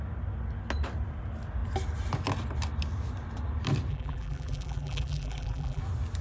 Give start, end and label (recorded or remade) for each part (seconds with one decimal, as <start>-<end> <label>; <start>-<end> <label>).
0.0-3.9 recorded; 3.9-5.8 remade; 5.8-6.2 recorded